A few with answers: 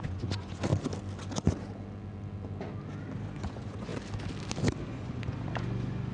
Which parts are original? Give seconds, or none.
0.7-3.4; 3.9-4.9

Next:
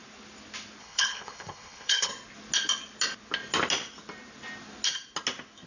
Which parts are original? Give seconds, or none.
0.0-0.8; 2.1-5.7

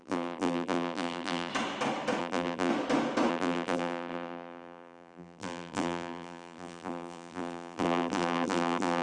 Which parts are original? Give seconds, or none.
1.5-2.2; 2.7-3.3

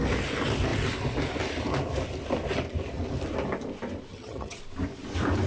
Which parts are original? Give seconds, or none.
0.0-4.1; 4.6-5.5